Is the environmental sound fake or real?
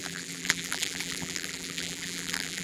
fake